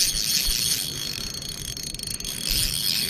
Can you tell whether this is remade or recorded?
recorded